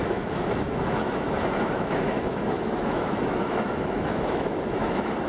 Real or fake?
fake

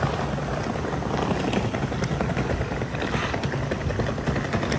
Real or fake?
real